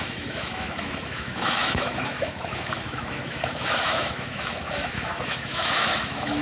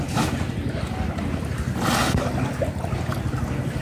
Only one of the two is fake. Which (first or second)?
first